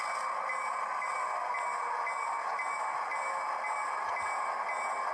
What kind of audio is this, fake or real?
real